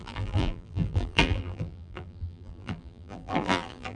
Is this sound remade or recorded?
remade